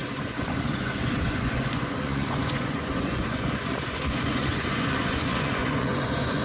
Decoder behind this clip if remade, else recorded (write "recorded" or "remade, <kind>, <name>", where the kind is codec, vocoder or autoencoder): remade, vocoder, Vocos